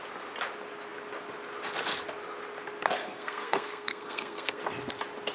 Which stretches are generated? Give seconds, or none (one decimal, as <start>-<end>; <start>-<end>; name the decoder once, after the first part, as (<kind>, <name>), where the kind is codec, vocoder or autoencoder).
3.0-4.6 (codec, SNAC)